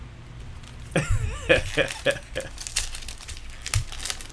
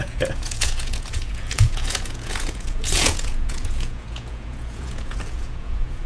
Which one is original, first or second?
first